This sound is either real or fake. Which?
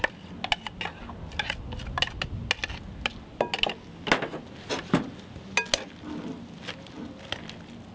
real